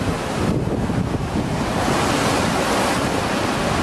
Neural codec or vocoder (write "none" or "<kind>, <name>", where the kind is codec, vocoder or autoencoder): none